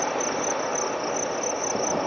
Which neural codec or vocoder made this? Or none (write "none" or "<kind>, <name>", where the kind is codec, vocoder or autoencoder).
none